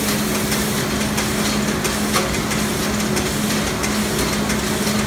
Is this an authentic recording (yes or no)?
yes